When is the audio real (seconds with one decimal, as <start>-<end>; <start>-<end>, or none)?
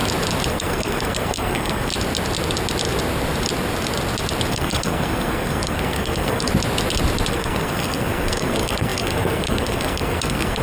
0.0-0.5; 1.9-4.5; 6.5-7.3